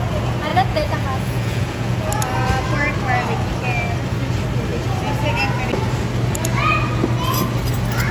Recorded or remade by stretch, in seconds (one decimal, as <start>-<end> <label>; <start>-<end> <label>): 0.0-0.5 recorded; 0.5-2.1 remade; 2.1-8.1 recorded